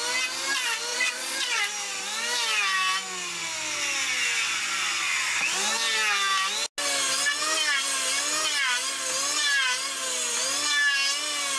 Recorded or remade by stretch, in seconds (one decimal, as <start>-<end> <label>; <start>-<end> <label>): 0.0-0.9 recorded; 0.9-1.6 remade; 1.6-11.6 recorded